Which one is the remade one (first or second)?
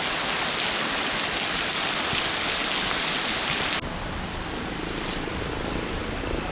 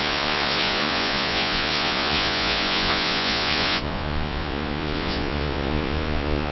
second